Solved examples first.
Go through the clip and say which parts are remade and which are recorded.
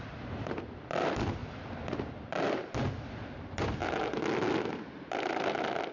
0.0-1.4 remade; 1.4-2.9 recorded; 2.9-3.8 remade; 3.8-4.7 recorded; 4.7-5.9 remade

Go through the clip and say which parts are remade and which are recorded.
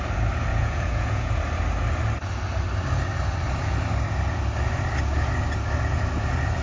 0.0-0.5 recorded; 0.5-1.3 remade; 1.3-6.6 recorded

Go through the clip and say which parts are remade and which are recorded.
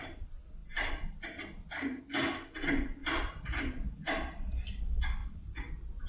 0.0-0.6 recorded; 0.6-2.0 remade; 2.0-5.2 recorded; 5.2-6.1 remade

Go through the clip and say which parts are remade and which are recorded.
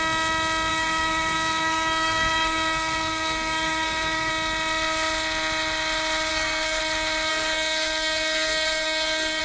0.0-0.7 recorded; 0.7-4.3 remade; 4.3-6.3 recorded; 6.3-6.8 remade; 6.8-7.3 recorded; 7.3-9.4 remade